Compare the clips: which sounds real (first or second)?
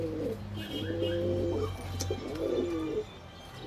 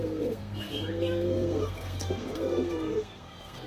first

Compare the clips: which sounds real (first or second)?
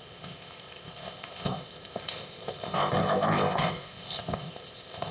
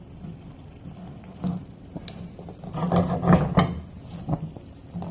second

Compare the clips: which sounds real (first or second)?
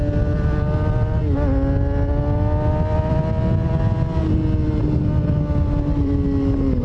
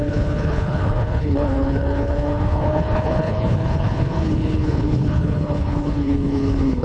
first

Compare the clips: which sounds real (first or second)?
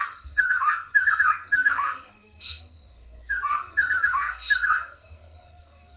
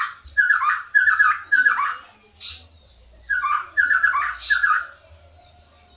second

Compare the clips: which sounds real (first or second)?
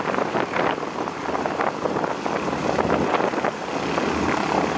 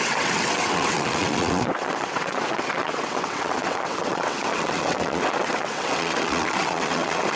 first